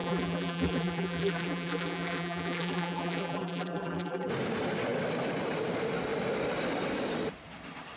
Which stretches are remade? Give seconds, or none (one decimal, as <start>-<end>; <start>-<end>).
0.0-4.3